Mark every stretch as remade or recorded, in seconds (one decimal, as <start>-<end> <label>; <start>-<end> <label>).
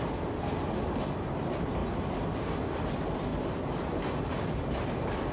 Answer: 0.0-3.3 recorded; 3.3-5.3 remade